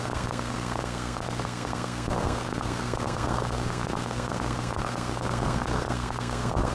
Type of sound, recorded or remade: remade